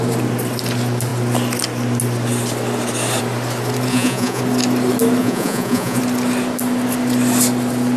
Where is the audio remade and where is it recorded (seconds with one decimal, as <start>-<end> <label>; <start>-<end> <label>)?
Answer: 0.0-3.9 recorded; 3.9-4.4 remade; 4.4-5.2 recorded; 5.2-6.0 remade; 6.0-8.0 recorded